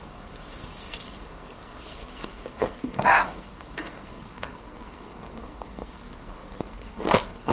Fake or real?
fake